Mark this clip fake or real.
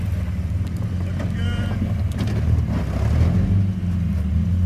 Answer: real